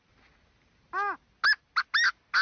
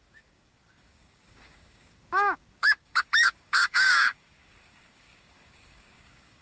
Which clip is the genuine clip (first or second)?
first